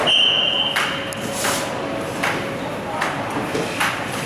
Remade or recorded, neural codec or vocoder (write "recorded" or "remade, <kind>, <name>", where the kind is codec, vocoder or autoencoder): recorded